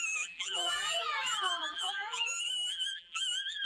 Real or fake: fake